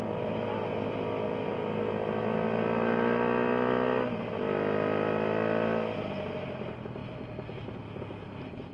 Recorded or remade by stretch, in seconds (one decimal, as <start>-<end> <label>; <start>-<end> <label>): 0.0-8.7 recorded